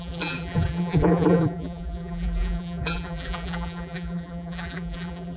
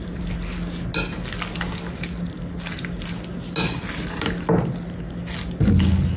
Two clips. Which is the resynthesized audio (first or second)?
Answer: first